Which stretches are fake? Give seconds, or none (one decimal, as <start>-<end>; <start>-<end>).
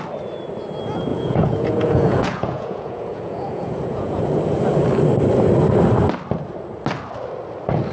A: 1.1-4.4